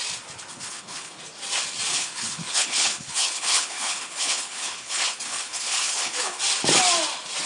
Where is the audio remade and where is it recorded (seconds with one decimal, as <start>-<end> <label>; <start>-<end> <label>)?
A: 0.0-0.5 recorded; 0.5-1.2 remade; 1.2-1.9 recorded; 1.9-6.4 remade; 6.4-7.5 recorded